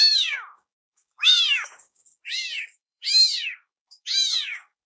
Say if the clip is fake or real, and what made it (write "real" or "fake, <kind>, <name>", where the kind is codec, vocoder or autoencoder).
fake, codec, DAC